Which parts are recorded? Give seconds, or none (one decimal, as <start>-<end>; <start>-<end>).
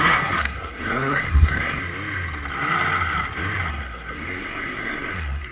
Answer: 1.8-3.7